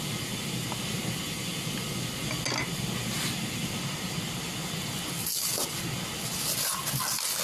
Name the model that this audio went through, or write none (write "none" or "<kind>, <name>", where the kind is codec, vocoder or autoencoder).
none